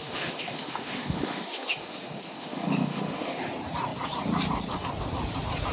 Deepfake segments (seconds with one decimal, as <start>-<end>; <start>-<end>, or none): 0.0-3.4